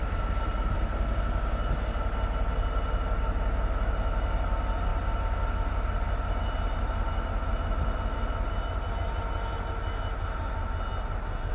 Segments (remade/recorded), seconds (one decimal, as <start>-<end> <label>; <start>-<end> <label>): 0.0-11.5 recorded